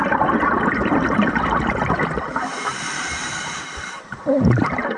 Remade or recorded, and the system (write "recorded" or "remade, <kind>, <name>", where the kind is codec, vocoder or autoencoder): remade, vocoder, BigVGAN v2